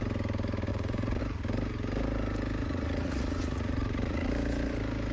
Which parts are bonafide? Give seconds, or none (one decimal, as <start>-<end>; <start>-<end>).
0.0-0.7; 1.2-2.6; 4.3-5.1